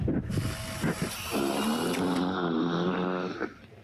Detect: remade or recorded recorded